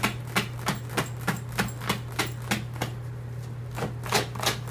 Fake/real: real